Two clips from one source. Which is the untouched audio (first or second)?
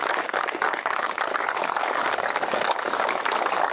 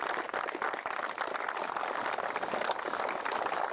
second